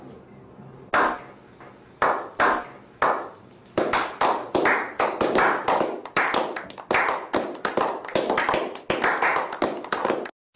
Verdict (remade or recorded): recorded